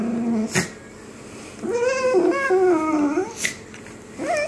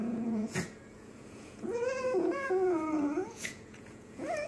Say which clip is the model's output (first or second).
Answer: second